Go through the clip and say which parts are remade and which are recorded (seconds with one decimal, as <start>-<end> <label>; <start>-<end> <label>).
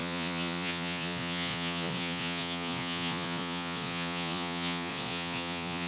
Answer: 0.0-5.9 remade